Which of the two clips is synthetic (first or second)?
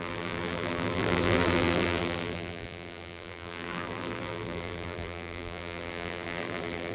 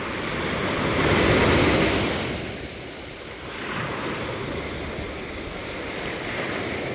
first